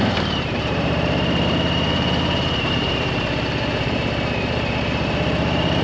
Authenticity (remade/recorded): remade